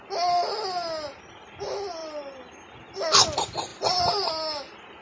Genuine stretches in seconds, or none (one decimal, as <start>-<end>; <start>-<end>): 0.0-2.0; 2.9-3.7; 4.3-5.0